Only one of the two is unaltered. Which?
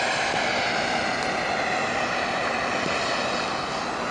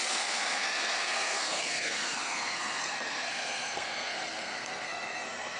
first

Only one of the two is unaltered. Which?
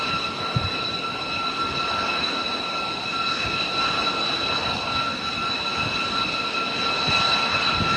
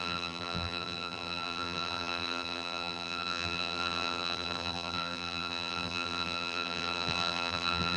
first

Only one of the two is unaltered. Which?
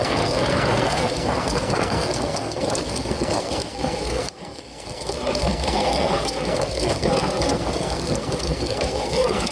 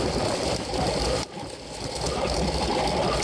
second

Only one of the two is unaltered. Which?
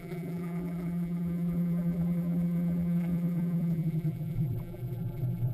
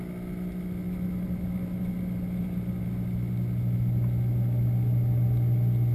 second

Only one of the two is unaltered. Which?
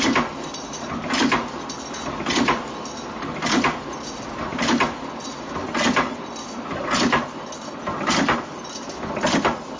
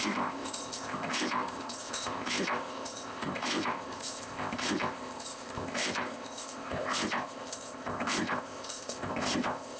first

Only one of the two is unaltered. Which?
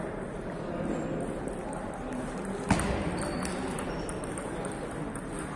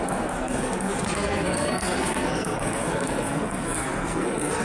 first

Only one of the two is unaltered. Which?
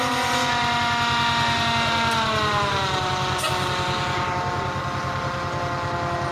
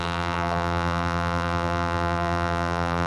first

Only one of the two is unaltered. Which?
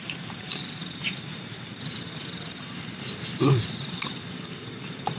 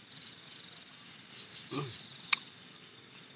second